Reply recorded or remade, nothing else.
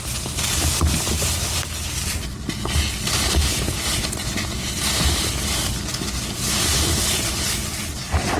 recorded